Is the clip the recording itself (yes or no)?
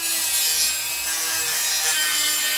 yes